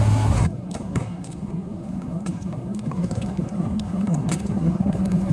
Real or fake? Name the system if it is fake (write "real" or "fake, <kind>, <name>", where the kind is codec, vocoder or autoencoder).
fake, codec, SNAC